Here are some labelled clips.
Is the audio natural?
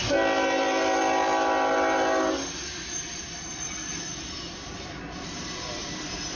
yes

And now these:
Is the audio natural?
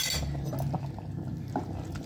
yes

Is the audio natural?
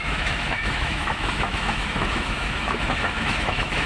no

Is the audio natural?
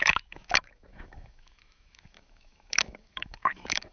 no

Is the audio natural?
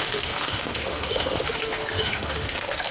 no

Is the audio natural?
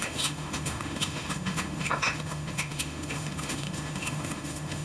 no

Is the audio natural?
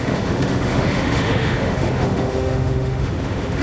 no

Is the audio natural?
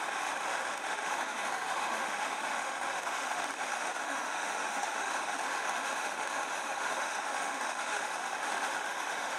no